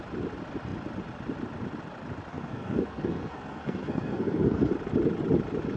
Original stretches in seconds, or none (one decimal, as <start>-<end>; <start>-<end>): 0.0-2.3; 4.7-5.8